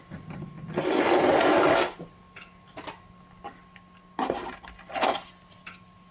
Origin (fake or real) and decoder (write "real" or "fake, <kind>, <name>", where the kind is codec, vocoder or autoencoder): real